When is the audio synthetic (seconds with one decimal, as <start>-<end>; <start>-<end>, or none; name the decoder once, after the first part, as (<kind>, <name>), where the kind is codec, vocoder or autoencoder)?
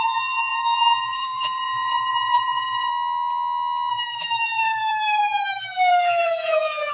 0.0-2.9 (vocoder, BigVGAN v2); 3.9-6.9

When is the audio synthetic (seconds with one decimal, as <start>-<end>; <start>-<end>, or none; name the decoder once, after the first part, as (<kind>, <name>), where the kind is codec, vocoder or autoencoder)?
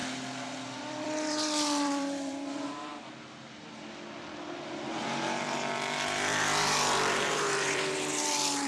0.7-2.9 (vocoder, BigVGAN v2); 4.9-8.7